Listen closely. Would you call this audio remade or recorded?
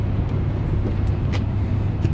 recorded